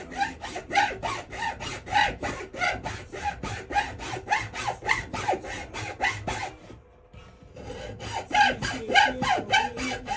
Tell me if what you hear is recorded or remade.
recorded